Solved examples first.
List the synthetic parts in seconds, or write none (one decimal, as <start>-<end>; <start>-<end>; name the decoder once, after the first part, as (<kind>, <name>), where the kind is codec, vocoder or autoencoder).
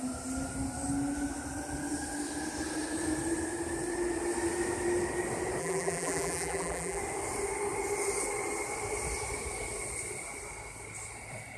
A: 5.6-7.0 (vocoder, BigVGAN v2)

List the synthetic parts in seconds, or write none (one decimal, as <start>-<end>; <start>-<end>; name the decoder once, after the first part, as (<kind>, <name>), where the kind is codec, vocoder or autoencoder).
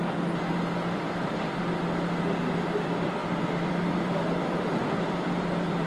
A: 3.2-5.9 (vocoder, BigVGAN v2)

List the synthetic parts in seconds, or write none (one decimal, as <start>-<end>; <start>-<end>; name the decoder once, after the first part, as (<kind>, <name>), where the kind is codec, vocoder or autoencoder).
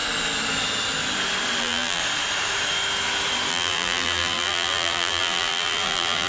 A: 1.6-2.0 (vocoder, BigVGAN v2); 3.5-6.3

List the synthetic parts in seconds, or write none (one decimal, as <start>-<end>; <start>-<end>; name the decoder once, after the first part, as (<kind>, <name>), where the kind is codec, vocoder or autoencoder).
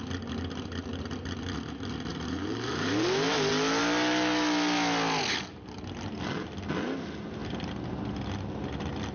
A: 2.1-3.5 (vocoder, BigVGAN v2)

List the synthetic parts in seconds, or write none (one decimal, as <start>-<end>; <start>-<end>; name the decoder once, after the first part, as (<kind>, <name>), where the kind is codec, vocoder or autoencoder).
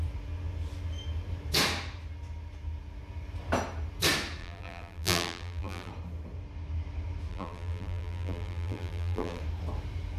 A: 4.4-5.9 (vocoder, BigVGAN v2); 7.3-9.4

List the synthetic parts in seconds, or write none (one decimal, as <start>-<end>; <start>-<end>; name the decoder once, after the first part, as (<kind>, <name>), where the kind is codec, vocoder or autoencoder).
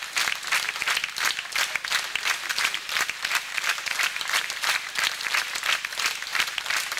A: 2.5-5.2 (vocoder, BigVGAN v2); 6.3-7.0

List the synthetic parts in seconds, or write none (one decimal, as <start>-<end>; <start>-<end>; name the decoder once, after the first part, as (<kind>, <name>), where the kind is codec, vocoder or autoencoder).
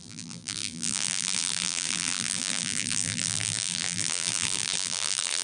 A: 0.0-5.4 (vocoder, BigVGAN v2)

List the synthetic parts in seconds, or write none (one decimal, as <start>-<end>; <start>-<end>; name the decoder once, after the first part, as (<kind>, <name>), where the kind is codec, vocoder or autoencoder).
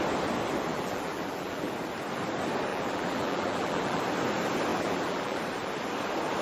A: 0.7-1.7 (vocoder, BigVGAN v2); 2.7-4.0; 4.7-5.4